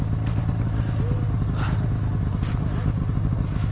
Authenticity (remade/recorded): recorded